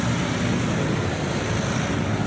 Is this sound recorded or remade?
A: recorded